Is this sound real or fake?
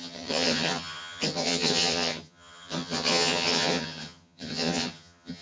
fake